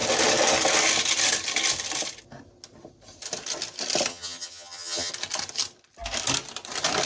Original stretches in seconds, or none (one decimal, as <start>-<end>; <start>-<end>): 0.0-4.1; 5.1-7.1